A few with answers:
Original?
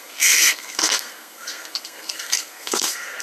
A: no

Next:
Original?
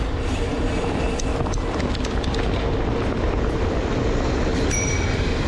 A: no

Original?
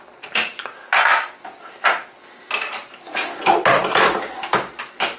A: yes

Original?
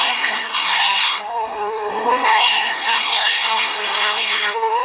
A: no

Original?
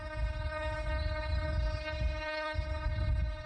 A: no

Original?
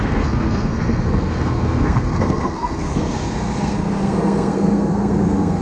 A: no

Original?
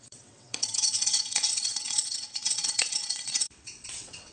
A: no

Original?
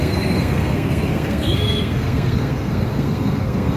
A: no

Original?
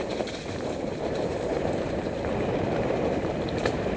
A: no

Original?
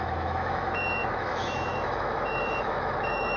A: no